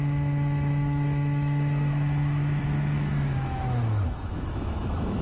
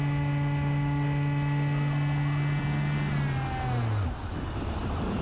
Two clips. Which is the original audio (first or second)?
second